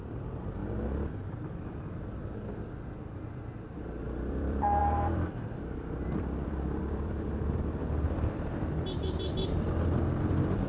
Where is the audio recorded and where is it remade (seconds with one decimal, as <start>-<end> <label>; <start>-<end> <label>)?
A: 0.0-0.6 remade; 0.6-1.2 recorded; 1.2-2.2 remade; 2.2-3.3 recorded; 3.3-10.7 remade